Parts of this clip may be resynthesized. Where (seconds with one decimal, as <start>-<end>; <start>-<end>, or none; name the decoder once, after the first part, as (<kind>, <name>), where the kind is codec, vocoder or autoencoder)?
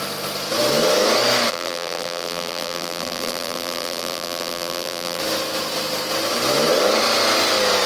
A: 1.5-5.2 (vocoder, BigVGAN v2)